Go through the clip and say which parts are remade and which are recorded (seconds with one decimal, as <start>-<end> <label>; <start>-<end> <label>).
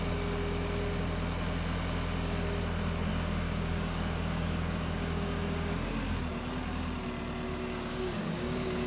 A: 0.0-3.1 recorded; 3.1-6.2 remade; 6.2-7.5 recorded; 7.5-8.9 remade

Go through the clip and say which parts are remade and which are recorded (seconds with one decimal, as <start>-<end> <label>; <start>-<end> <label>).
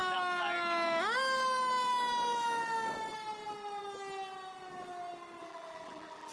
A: 0.0-5.4 recorded; 5.4-6.3 remade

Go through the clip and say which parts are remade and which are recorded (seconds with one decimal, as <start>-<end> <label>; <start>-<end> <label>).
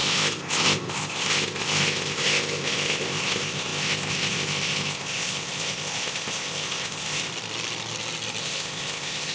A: 0.0-7.3 remade; 7.3-8.4 recorded; 8.4-9.3 remade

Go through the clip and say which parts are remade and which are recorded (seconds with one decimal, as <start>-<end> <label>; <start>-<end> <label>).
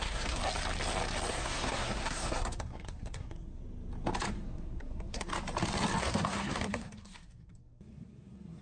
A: 0.0-0.4 remade; 0.4-1.3 recorded; 1.3-3.6 remade; 3.6-4.3 recorded; 4.3-5.3 remade; 5.3-6.0 recorded; 6.0-8.6 remade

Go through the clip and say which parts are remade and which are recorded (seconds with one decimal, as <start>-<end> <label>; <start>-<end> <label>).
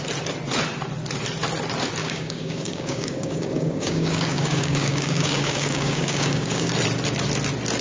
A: 0.0-2.0 recorded; 2.0-6.7 remade; 6.7-7.8 recorded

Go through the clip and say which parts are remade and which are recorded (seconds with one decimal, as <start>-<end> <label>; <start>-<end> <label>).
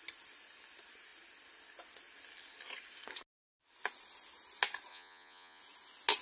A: 0.0-4.9 recorded; 4.9-5.6 remade; 5.6-6.2 recorded